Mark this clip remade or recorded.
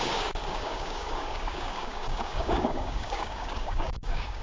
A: remade